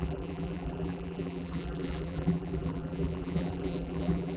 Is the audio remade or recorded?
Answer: remade